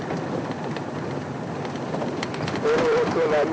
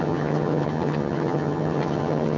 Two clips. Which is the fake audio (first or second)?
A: second